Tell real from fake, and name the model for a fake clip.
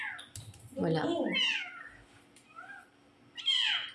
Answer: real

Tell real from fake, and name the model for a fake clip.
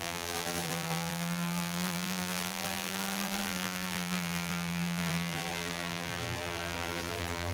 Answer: fake, vocoder, BigVGAN v2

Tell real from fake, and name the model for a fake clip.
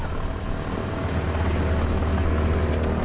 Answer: real